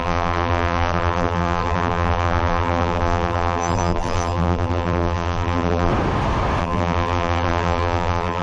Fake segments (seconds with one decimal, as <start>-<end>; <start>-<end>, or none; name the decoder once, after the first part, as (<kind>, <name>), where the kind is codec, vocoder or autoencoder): 0.0-5.9 (vocoder, BigVGAN v2); 6.6-8.4